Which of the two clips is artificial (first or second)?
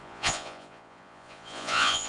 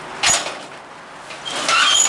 first